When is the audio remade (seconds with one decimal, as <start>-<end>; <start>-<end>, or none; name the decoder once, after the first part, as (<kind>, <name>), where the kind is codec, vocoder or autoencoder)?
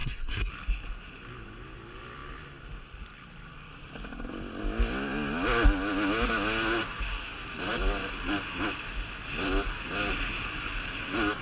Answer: 0.0-0.5 (codec, SNAC)